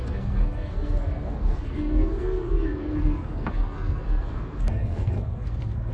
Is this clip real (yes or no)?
no